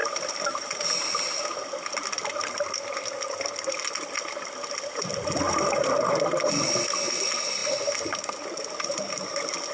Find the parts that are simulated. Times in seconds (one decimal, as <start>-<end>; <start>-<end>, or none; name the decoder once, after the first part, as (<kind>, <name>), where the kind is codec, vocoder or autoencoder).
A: none